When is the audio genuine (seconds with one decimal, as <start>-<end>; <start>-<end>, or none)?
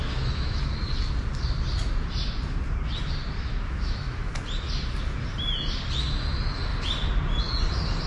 0.7-3.4; 4.3-8.1